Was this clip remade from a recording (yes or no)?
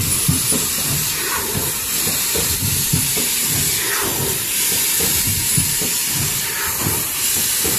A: yes